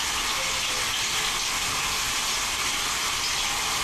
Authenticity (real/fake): real